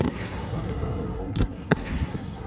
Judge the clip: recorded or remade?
remade